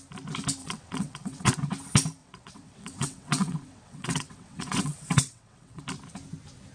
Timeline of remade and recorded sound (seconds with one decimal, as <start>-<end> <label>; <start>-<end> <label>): 0.0-0.6 recorded; 0.6-1.5 remade; 1.5-2.2 recorded; 2.2-5.8 remade; 5.8-6.7 recorded